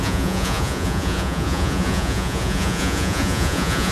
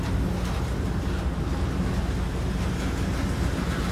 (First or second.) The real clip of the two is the second